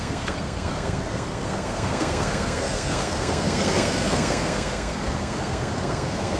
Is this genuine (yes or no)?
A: no